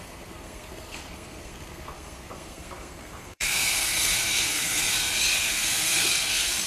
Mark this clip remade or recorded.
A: remade